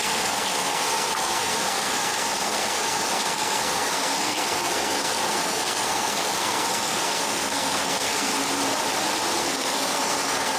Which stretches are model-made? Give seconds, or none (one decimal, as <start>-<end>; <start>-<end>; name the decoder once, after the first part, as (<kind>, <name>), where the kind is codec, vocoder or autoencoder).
0.0-8.3 (codec, SNAC); 9.4-10.6